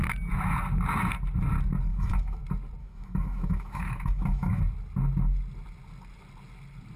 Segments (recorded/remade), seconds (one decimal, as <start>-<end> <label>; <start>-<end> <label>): 0.0-1.9 recorded; 1.9-2.4 remade; 2.4-2.8 recorded; 2.8-4.6 remade; 4.6-7.0 recorded